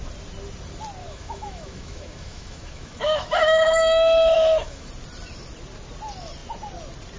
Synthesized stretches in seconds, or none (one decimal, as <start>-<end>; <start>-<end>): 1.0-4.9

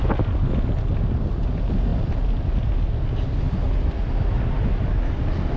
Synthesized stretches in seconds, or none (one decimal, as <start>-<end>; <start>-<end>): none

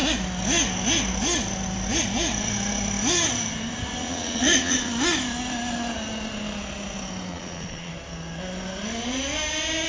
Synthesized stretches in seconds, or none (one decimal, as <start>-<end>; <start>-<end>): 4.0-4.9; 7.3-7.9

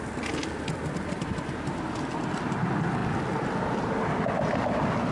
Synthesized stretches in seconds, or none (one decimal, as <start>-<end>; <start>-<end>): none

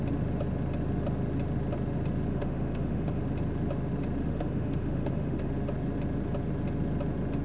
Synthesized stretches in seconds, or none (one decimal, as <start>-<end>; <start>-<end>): 2.3-3.2; 4.2-5.5

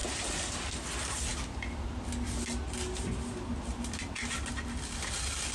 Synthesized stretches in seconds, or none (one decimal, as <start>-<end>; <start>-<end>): none